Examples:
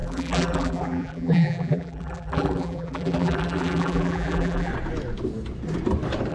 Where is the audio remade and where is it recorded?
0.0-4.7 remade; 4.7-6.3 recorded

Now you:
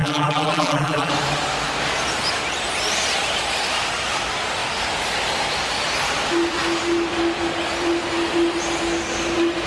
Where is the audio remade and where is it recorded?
0.0-1.1 remade; 1.1-9.7 recorded

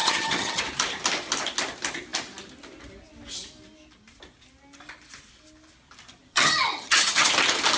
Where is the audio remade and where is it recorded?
0.0-0.6 remade; 0.6-6.3 recorded; 6.3-7.3 remade; 7.3-7.8 recorded

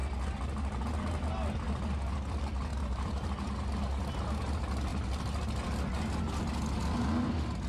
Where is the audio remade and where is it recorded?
0.0-2.7 recorded; 2.7-3.5 remade; 3.5-7.7 recorded

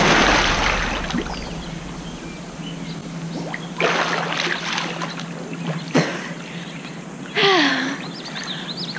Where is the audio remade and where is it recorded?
0.0-9.0 recorded

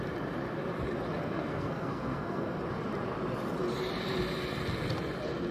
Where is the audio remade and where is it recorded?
0.0-1.2 recorded; 1.2-2.6 remade; 2.6-5.5 recorded

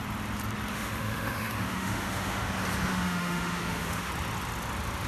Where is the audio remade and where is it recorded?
0.0-0.7 recorded; 0.7-2.5 remade; 2.5-2.9 recorded; 2.9-4.1 remade; 4.1-5.1 recorded

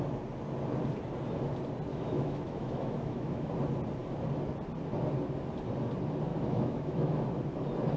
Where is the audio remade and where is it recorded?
0.0-1.9 recorded; 1.9-3.5 remade; 3.5-6.3 recorded; 6.3-7.2 remade; 7.2-8.0 recorded